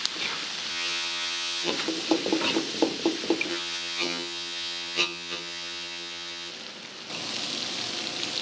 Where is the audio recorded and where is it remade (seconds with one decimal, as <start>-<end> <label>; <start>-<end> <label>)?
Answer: 0.0-0.7 recorded; 0.7-1.7 remade; 1.7-3.5 recorded; 3.5-6.5 remade; 6.5-8.4 recorded